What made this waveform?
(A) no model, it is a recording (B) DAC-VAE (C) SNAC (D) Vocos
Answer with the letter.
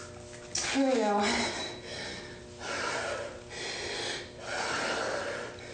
A